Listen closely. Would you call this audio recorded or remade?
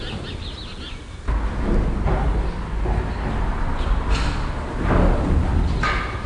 recorded